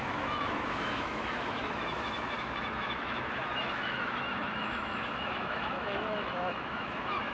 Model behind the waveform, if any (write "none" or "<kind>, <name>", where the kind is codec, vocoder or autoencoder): autoencoder, DAC-VAE